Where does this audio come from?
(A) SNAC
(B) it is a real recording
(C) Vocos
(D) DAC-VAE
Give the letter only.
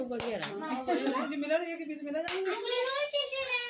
B